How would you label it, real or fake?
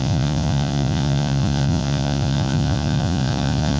fake